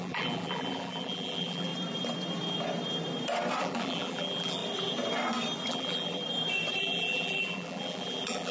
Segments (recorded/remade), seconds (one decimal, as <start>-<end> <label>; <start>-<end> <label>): 0.0-1.7 remade; 1.7-3.6 recorded; 3.6-4.6 remade; 4.6-5.7 recorded; 5.7-6.2 remade; 6.2-6.8 recorded; 6.8-8.5 remade